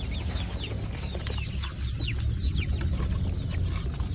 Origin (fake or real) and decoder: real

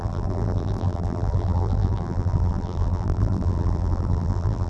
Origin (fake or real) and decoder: fake, vocoder, BigVGAN v2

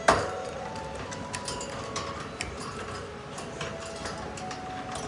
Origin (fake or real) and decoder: real